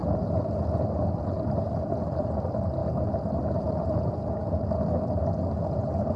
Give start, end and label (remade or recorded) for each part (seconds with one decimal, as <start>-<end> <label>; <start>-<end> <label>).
0.0-1.2 recorded; 1.2-2.8 remade; 2.8-5.0 recorded; 5.0-6.2 remade